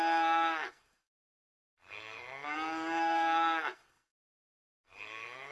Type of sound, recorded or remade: remade